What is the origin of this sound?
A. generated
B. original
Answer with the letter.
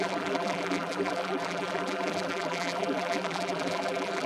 A